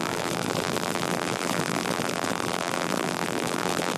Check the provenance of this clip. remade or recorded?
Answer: remade